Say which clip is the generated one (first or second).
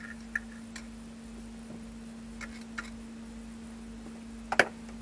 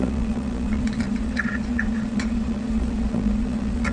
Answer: second